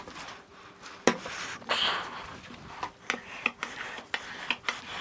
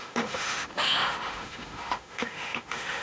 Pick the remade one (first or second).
second